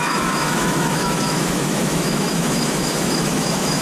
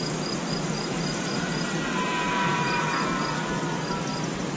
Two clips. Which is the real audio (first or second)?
second